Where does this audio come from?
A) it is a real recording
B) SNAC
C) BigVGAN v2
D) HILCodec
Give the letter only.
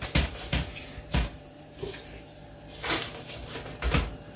C